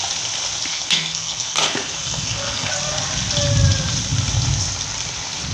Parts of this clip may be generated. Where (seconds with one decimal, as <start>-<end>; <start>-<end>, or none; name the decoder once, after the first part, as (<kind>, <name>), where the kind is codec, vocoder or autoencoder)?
0.7-2.7 (codec, SNAC)